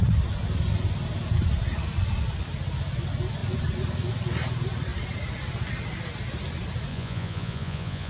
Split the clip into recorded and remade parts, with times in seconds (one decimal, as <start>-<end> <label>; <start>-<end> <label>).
0.0-6.9 recorded; 6.9-8.1 remade